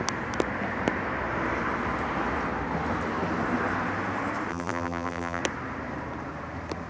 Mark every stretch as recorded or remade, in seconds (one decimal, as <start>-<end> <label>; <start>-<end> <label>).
0.0-4.5 recorded; 4.5-5.4 remade; 5.4-6.9 recorded